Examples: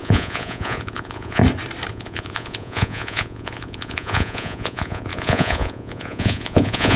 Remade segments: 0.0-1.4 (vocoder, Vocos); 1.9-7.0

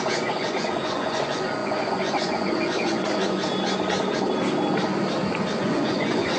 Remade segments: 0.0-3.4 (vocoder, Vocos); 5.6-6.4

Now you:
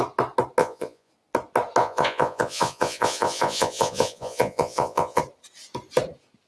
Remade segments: 0.6-1.1 (vocoder, Vocos); 1.8-5.2